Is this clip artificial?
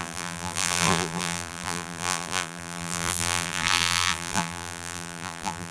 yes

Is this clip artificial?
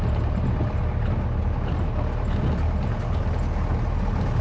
no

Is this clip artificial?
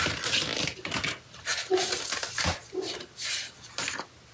no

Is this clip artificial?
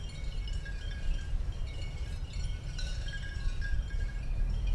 yes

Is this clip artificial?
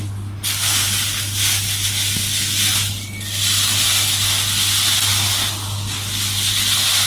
no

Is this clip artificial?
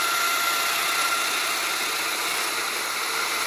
no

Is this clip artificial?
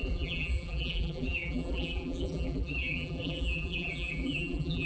yes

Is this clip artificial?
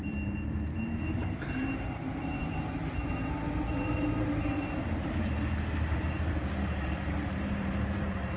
yes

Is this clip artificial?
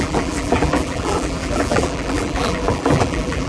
yes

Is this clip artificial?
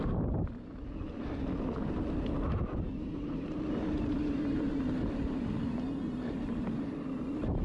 no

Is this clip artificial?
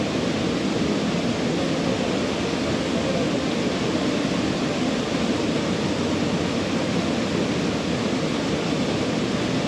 no